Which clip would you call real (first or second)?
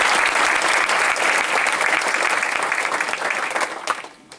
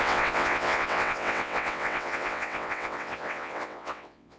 first